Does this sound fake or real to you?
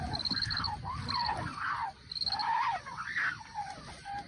real